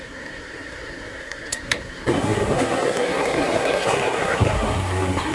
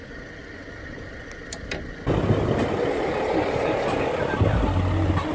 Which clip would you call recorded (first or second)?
second